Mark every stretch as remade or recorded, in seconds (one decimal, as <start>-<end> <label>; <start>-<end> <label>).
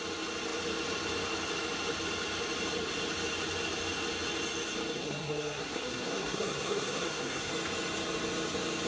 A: 0.0-5.0 recorded; 5.0-7.5 remade; 7.5-8.9 recorded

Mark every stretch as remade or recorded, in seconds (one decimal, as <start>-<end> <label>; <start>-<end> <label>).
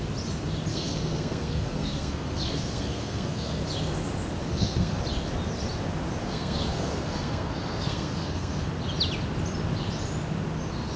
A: 0.0-0.7 recorded; 0.7-3.6 remade; 3.6-4.4 recorded; 4.4-5.0 remade; 5.0-6.2 recorded; 6.2-8.7 remade; 8.7-11.0 recorded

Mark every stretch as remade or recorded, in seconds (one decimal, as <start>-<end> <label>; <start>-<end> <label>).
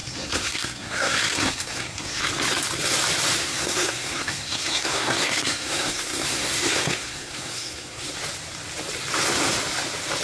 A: 0.0-2.3 remade; 2.3-3.4 recorded; 3.4-8.1 remade; 8.1-10.2 recorded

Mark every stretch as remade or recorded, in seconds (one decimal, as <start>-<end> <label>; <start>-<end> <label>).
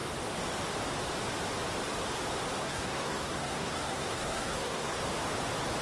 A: 0.0-2.6 recorded; 2.6-5.0 remade; 5.0-5.8 recorded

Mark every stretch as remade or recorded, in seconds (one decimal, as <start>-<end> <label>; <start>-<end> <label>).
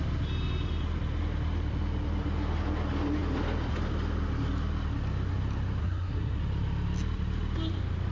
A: 0.0-5.8 recorded; 5.8-6.4 remade; 6.4-8.1 recorded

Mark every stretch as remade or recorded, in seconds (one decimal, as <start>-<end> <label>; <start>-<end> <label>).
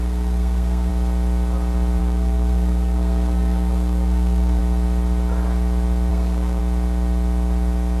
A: 0.0-0.9 remade; 0.9-2.0 recorded; 2.0-4.6 remade; 4.6-6.1 recorded; 6.1-6.6 remade; 6.6-8.0 recorded